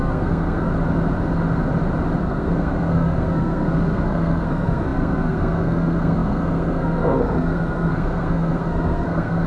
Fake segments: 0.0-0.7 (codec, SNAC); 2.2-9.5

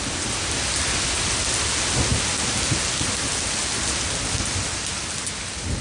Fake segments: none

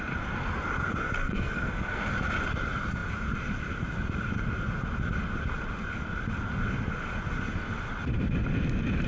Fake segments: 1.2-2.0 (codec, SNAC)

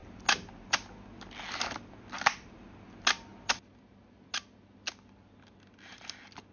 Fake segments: none

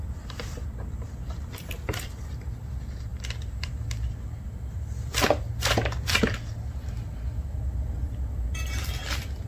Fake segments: none

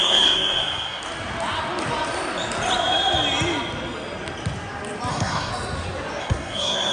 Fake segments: 0.0-1.0 (codec, SNAC); 5.1-5.5; 6.2-6.9